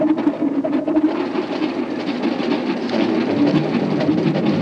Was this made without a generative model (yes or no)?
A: yes